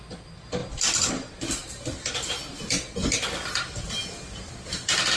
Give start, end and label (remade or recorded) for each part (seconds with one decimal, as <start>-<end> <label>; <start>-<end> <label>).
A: 0.0-5.2 recorded